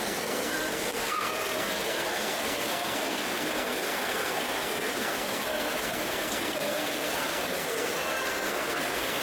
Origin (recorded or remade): remade